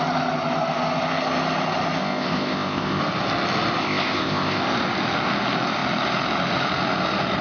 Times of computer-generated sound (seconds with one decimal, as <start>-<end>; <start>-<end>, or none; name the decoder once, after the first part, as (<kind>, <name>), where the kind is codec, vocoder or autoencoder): 2.0-3.0 (codec, ZipCodec); 3.8-4.6